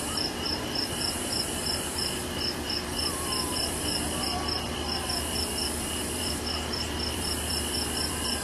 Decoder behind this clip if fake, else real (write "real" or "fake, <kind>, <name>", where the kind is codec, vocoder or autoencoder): fake, vocoder, BigVGAN v2